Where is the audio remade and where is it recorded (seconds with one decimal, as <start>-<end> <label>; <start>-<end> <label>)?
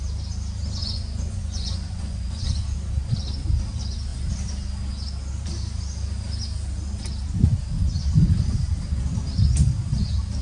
0.0-0.8 recorded; 0.8-2.5 remade; 2.5-10.4 recorded